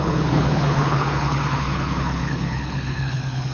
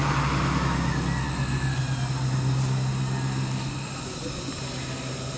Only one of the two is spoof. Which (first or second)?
first